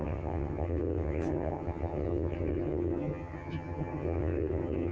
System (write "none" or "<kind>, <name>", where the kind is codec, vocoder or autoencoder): vocoder, HiFi-GAN